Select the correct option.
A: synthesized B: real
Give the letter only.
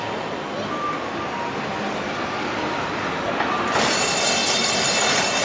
B